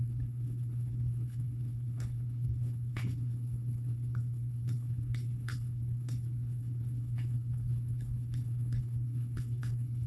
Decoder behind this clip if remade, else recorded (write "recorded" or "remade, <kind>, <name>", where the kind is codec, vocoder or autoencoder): remade, codec, HILCodec